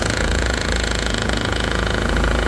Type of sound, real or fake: fake